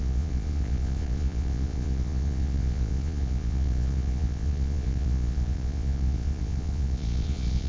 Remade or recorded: remade